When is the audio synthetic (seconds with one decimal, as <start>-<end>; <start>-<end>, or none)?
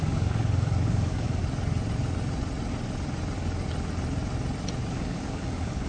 0.0-1.4; 4.9-5.9